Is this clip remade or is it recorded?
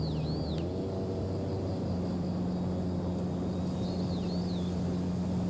recorded